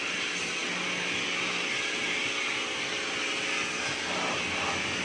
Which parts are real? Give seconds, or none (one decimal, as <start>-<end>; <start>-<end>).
0.0-5.0